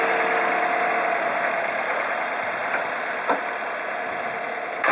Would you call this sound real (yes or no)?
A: yes